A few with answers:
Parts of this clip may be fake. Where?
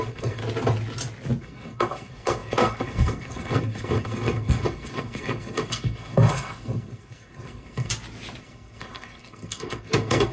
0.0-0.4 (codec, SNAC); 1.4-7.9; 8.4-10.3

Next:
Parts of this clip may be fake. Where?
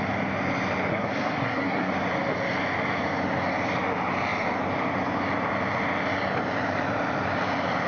0.9-1.9 (codec, SNAC)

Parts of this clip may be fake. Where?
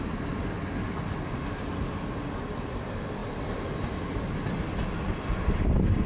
none